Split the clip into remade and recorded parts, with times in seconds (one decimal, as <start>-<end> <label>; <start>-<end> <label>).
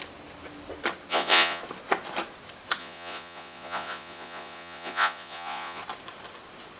0.0-1.1 recorded; 1.1-1.6 remade; 1.6-2.8 recorded; 2.8-5.8 remade; 5.8-6.8 recorded